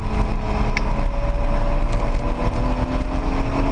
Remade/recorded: recorded